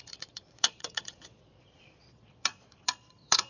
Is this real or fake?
fake